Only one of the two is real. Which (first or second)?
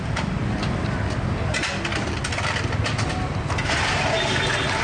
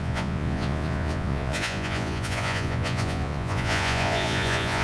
first